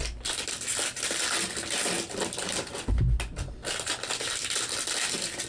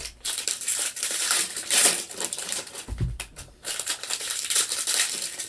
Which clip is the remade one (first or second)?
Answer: second